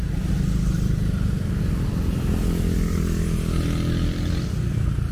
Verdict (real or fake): real